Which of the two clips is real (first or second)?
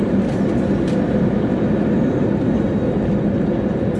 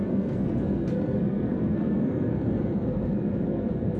first